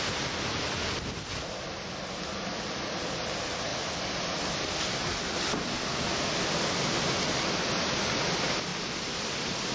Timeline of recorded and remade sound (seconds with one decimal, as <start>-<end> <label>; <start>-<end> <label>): 0.0-9.7 recorded